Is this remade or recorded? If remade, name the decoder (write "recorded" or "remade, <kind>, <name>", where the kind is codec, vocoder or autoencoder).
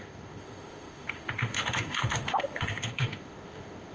remade, autoencoder, DAC-VAE